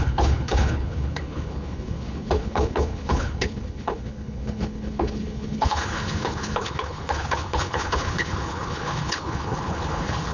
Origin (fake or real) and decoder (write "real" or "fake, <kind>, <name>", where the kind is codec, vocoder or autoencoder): fake, codec, HILCodec